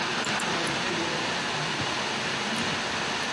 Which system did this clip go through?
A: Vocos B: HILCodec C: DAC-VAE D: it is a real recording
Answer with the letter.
D